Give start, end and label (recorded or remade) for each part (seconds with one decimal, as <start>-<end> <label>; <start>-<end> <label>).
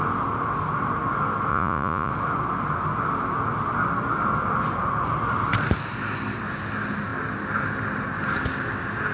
0.0-1.5 recorded; 1.5-2.1 remade; 2.1-9.1 recorded